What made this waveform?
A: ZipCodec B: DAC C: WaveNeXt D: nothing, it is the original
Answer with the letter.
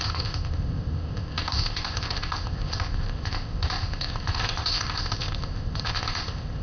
A